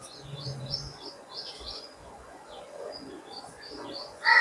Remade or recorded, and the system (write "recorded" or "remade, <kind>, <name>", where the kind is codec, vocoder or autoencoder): remade, vocoder, Vocos